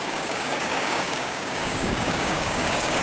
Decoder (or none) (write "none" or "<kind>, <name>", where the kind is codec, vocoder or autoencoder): codec, DAC